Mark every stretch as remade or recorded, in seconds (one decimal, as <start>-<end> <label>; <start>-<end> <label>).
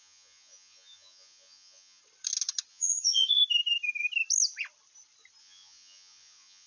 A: 0.0-2.0 remade; 2.0-2.7 recorded; 2.7-3.4 remade; 3.4-5.4 recorded; 5.4-6.7 remade